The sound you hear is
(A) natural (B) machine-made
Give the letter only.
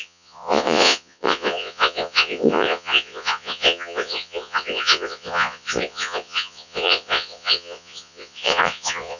B